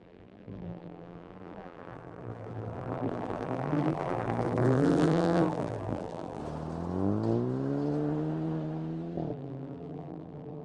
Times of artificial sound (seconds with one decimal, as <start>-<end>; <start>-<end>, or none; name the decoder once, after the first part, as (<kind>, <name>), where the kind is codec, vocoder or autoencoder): 0.0-6.4 (vocoder, BigVGAN v2); 9.3-10.6

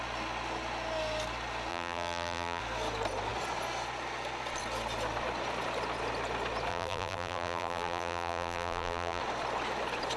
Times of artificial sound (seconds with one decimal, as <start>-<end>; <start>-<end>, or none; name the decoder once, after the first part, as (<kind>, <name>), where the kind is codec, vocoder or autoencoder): 1.7-2.6 (vocoder, BigVGAN v2); 6.7-9.2

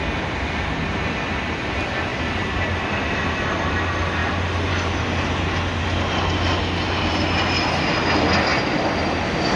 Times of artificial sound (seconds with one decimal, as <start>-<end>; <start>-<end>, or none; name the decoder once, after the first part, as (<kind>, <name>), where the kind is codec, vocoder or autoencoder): 2.1-3.8 (vocoder, BigVGAN v2)